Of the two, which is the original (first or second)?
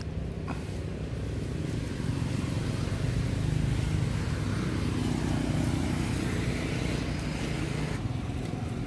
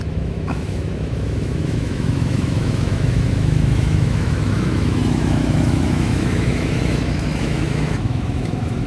first